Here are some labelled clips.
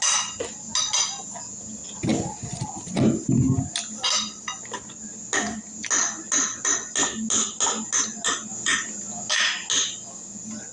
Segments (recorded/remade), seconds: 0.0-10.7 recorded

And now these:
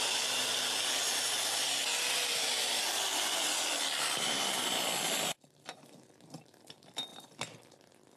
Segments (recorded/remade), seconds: 0.0-8.2 recorded

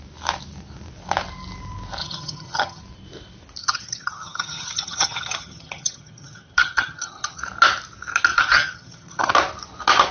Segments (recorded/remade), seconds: 0.0-2.0 recorded; 2.0-2.8 remade; 2.8-3.6 recorded; 3.6-7.4 remade; 7.4-8.3 recorded; 8.3-9.3 remade; 9.3-10.1 recorded